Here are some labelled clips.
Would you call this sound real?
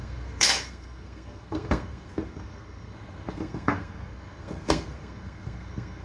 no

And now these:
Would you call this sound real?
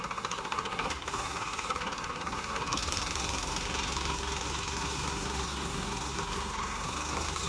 no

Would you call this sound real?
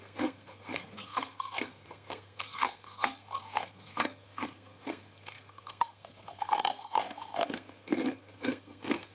no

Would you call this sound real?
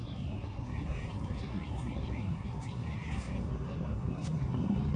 no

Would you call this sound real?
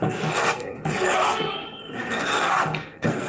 no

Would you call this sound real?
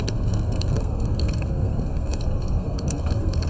no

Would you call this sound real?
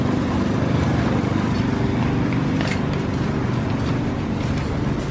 yes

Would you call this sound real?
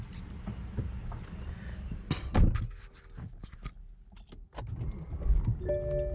yes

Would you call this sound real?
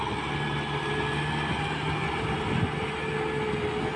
yes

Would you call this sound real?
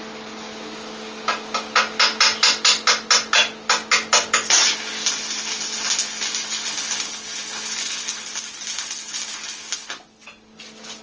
yes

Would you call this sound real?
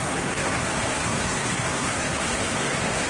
no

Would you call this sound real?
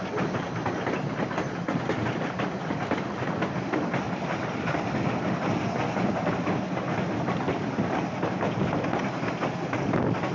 yes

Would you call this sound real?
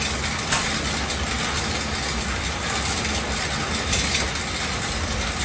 yes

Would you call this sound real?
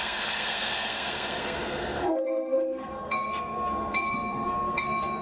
no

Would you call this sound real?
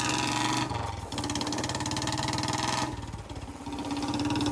yes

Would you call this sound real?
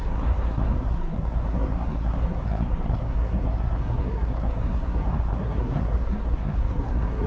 no